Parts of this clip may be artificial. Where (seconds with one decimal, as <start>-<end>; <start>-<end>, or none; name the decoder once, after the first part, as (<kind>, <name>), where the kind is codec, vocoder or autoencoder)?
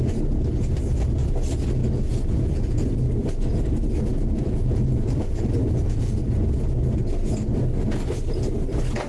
1.8-2.9 (vocoder, Vocos); 4.1-6.2